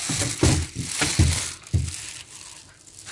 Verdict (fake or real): real